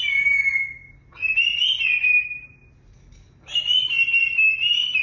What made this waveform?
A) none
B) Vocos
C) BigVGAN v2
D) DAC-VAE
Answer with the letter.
A